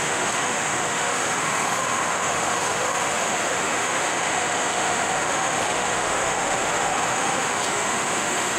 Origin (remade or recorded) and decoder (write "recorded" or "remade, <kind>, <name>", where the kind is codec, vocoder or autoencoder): remade, autoencoder, DAC-VAE